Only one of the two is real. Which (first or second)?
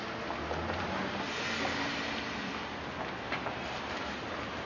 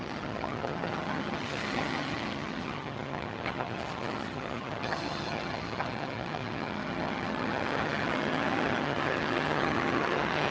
first